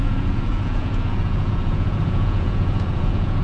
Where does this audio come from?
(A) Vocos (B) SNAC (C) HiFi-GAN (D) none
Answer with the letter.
A